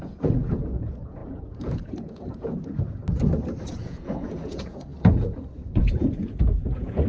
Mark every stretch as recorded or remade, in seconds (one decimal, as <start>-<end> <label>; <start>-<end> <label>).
0.0-3.0 remade; 3.0-3.7 recorded; 3.7-4.9 remade; 4.9-5.8 recorded; 5.8-7.1 remade